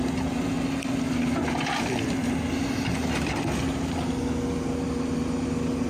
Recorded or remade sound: recorded